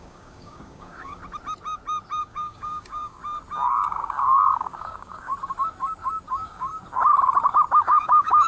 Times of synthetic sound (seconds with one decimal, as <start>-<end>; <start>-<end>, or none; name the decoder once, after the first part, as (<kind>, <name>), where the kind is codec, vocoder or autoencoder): 0.0-1.2 (codec, DAC); 2.2-3.2; 3.7-5.3; 6.3-6.7; 7.8-8.5